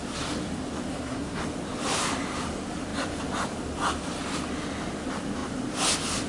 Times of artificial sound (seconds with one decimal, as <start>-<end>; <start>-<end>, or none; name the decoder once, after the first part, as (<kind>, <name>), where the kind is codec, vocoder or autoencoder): 0.9-1.4 (codec, SNAC)